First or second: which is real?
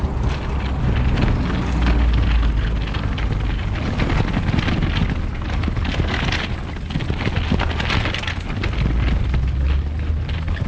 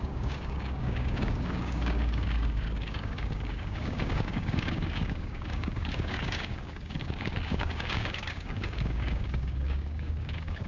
first